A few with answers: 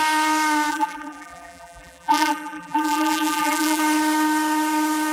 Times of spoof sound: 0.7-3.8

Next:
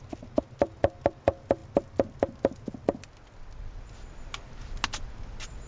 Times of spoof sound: none